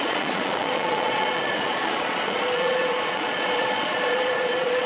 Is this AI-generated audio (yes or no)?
yes